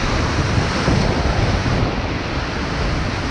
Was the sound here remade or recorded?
recorded